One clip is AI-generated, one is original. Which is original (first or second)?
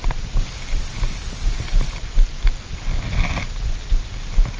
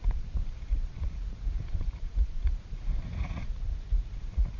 first